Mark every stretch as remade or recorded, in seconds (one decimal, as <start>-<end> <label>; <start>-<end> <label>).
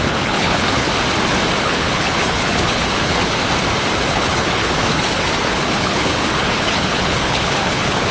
0.0-0.9 remade; 0.9-1.6 recorded; 1.6-3.4 remade; 3.4-4.1 recorded; 4.1-8.1 remade